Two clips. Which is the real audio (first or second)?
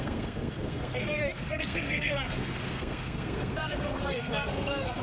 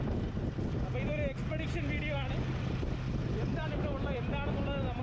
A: second